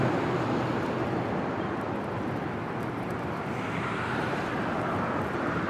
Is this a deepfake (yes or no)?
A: yes